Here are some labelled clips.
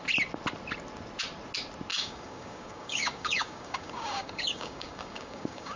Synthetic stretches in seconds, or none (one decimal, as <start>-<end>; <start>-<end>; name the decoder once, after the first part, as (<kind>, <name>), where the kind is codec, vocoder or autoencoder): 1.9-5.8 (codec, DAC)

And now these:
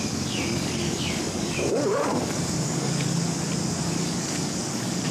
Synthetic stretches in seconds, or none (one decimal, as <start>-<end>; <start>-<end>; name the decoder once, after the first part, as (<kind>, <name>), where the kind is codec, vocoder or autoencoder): 0.0-3.1 (codec, DAC); 3.8-5.1

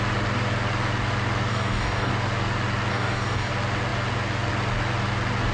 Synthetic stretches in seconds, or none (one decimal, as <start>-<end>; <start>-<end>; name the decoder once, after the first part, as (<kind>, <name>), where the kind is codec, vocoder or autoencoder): 1.5-2.1 (codec, DAC); 2.9-3.5

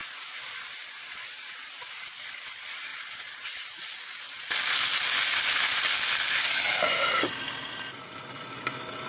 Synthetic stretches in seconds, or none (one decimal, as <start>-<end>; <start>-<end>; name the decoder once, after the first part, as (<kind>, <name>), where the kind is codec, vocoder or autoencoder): none

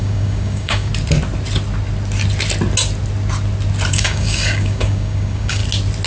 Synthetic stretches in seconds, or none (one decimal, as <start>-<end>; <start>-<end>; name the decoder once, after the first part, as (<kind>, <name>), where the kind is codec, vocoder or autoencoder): 0.0-0.9 (codec, DAC); 3.9-5.6

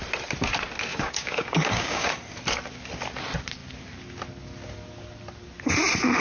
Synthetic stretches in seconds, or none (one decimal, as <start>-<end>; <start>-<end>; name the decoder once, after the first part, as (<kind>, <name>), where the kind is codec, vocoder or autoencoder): 0.9-2.1 (codec, DAC)

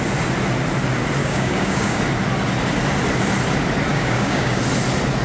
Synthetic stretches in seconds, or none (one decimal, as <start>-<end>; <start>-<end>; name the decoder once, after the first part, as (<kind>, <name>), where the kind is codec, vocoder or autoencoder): 1.2-2.0 (codec, DAC); 3.9-4.6

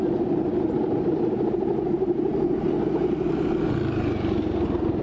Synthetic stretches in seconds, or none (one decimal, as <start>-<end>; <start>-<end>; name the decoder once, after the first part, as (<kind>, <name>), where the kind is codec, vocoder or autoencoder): none